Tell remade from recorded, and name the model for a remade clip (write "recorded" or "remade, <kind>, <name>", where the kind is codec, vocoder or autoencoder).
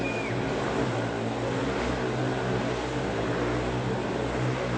recorded